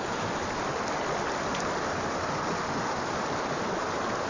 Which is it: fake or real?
real